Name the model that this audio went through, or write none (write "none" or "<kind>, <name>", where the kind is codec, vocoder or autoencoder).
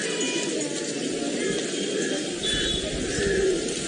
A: none